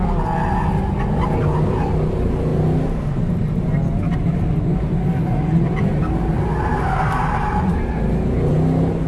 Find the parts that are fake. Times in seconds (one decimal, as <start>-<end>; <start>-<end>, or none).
none

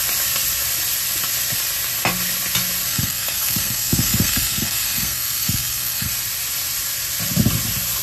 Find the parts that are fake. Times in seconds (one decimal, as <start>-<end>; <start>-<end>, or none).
2.9-6.1

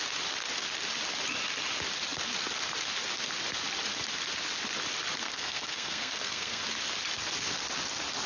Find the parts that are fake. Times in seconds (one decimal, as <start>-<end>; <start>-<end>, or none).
5.2-6.6

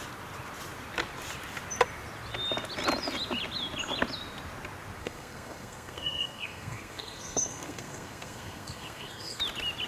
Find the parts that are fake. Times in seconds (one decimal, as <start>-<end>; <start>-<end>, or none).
5.0-9.4

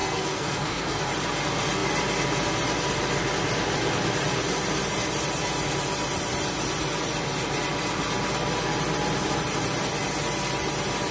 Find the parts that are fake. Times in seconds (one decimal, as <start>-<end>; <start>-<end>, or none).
0.0-1.0

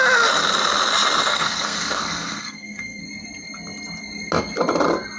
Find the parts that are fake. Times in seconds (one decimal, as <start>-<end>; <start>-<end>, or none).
1.3-3.0